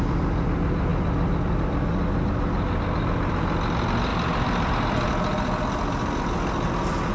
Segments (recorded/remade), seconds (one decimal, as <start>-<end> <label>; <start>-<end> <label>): 0.0-7.1 recorded